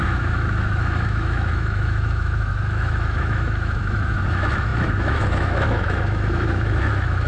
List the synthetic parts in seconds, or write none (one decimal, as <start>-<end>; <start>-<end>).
0.0-7.3